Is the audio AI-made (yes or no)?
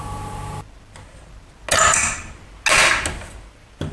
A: no